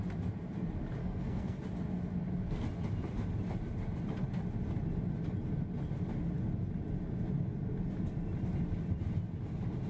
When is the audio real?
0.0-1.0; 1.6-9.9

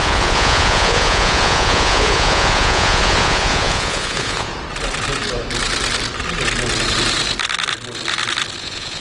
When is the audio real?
4.5-8.6

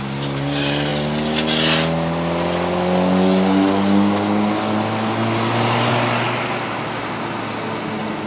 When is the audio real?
0.0-8.3

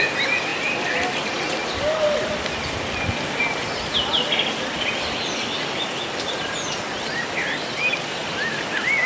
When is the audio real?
0.0-9.1

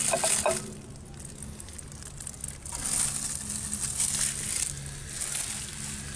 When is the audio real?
0.0-6.2

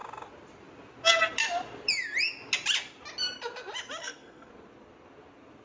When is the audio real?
0.0-4.0; 4.5-5.6

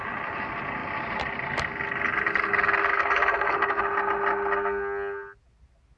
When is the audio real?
0.0-2.9; 3.8-6.0

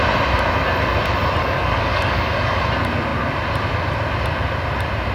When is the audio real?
0.0-1.4; 2.6-5.1